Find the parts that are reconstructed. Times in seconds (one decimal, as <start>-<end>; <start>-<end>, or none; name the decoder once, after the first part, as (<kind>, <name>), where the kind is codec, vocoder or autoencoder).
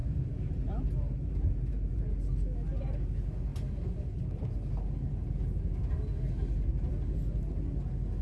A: 0.0-2.0 (vocoder, BigVGAN v2)